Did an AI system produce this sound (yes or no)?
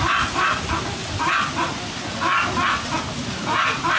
no